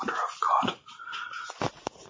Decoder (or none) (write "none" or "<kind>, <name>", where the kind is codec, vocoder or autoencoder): none